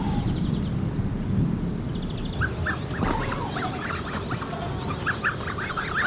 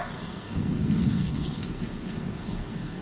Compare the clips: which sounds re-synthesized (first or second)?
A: second